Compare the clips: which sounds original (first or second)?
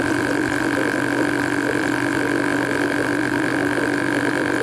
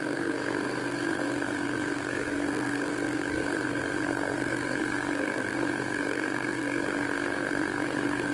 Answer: first